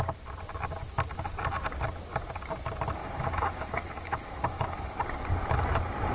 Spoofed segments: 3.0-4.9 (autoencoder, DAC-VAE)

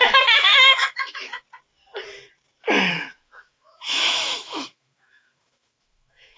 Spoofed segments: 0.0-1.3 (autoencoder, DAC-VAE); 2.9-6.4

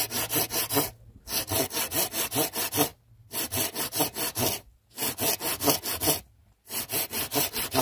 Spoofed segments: none

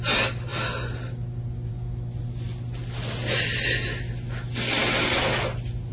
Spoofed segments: none

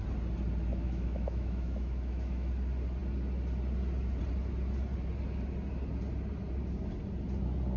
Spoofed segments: 0.7-2.5 (autoencoder, DAC-VAE)

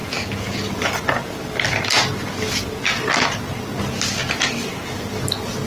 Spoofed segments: none